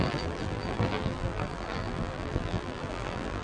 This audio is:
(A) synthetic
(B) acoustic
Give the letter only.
A